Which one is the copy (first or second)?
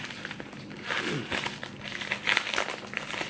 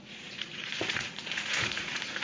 second